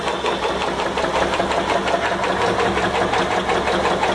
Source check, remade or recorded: recorded